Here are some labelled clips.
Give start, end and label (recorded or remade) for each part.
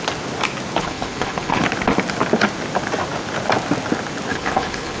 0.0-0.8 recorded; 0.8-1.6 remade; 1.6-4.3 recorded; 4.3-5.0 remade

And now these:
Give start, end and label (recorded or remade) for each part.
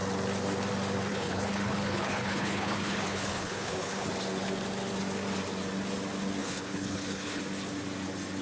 0.0-1.1 recorded; 1.1-4.1 remade; 4.1-6.4 recorded; 6.4-7.4 remade; 7.4-8.4 recorded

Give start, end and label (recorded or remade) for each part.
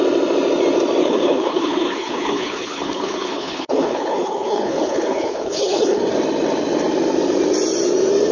0.0-1.0 recorded; 1.0-6.0 remade; 6.0-8.3 recorded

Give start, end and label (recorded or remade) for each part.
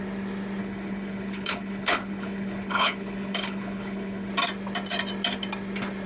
0.0-0.6 recorded; 0.6-4.3 remade; 4.3-6.1 recorded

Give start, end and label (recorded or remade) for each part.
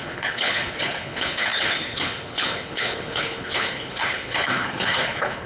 0.0-5.5 remade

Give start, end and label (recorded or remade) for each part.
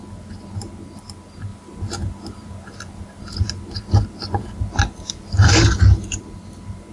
0.0-6.9 recorded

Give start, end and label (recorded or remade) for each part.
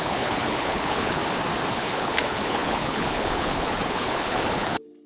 0.0-1.2 remade; 1.2-1.7 recorded; 1.7-5.1 remade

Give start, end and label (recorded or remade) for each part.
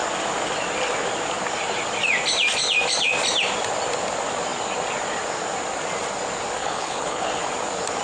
0.0-6.6 recorded; 6.6-7.4 remade; 7.4-8.0 recorded